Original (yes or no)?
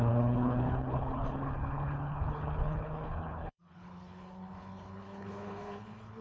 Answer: no